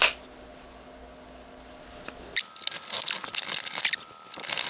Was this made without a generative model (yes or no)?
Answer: yes